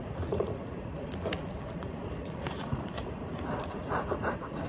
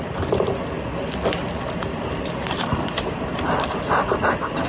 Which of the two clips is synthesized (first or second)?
first